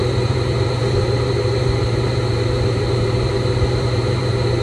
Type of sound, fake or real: fake